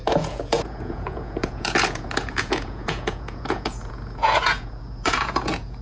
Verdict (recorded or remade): remade